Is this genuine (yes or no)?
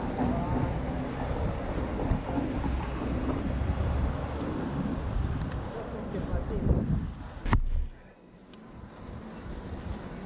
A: yes